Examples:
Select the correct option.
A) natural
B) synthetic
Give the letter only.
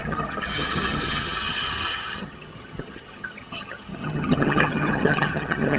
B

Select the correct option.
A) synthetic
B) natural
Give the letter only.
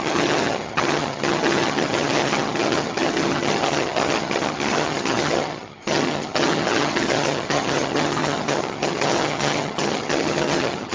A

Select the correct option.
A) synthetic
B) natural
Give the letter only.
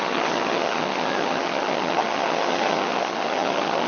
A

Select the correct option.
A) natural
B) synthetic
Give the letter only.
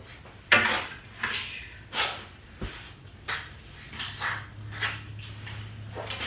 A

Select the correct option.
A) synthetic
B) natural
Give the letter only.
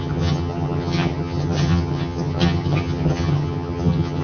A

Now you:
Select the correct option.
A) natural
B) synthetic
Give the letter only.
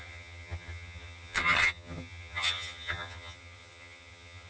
B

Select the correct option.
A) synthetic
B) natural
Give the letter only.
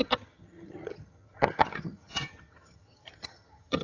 A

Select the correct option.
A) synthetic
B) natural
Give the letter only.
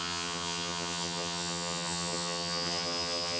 A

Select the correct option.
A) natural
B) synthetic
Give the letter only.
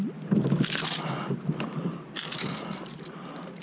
A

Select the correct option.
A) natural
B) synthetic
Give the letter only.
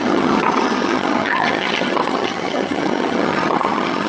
B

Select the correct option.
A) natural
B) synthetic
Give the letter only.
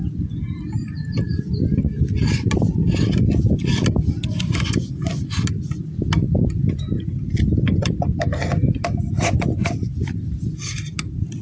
A